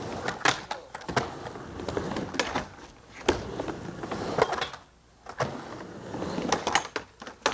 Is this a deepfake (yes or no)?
no